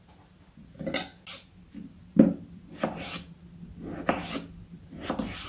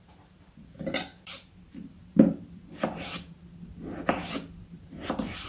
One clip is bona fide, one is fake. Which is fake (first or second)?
second